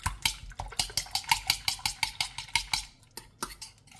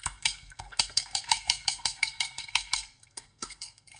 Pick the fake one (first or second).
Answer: second